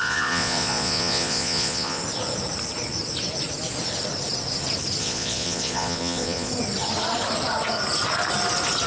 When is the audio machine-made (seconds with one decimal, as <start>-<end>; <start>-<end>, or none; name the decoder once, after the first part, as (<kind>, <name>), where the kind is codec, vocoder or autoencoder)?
0.0-2.0 (vocoder, Vocos); 5.0-6.5